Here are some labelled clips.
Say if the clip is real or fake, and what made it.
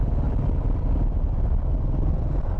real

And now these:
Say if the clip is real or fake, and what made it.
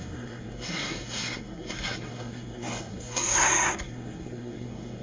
fake, codec, SNAC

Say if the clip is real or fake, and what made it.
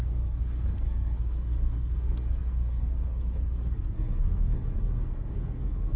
fake, codec, SNAC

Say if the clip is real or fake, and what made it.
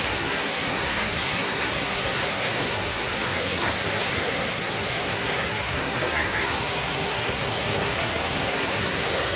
fake, codec, SNAC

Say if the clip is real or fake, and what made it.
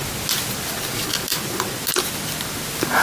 real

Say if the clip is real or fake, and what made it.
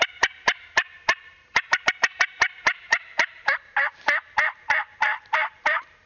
fake, vocoder, BigVGAN v2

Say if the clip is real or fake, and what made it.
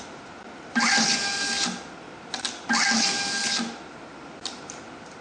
real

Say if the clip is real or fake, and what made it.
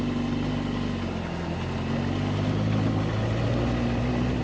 real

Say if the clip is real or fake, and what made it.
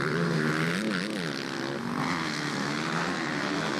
real